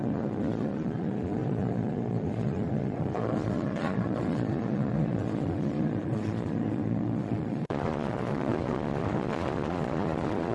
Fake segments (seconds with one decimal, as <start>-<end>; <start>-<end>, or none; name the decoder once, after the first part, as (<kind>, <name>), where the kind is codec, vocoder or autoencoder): 0.0-10.5 (vocoder, Vocos)